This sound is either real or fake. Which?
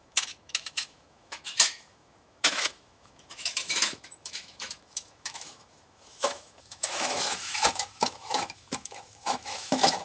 fake